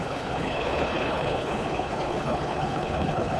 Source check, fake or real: fake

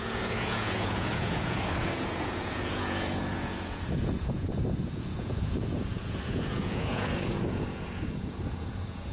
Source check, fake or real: fake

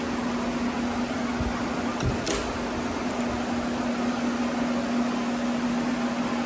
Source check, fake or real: real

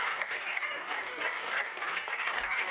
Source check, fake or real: fake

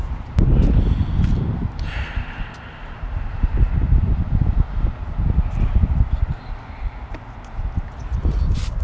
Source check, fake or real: real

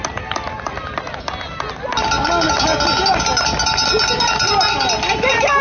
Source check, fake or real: real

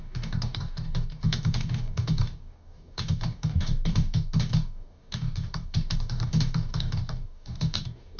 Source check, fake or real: fake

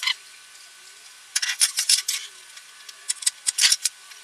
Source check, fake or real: fake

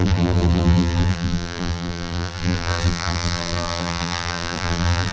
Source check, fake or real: fake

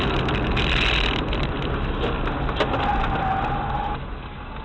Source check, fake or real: real